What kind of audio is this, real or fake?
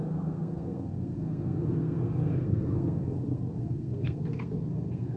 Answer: fake